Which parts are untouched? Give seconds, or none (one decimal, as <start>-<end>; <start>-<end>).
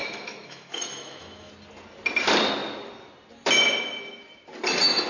1.5-5.1